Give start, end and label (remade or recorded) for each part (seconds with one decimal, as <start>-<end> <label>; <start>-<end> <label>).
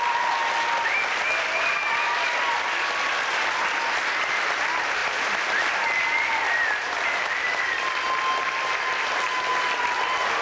0.0-10.4 recorded